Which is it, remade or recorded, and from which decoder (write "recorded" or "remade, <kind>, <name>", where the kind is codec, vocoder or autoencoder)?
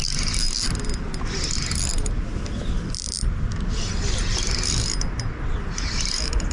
recorded